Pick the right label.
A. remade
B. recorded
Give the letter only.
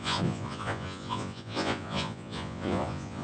A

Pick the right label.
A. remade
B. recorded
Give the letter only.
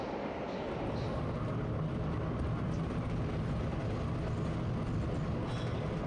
B